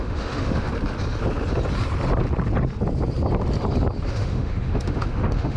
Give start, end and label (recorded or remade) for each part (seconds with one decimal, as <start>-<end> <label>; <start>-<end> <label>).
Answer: 0.0-0.7 remade; 0.7-4.1 recorded; 4.1-5.6 remade